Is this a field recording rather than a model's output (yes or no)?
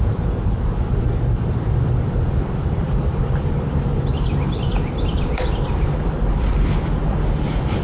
no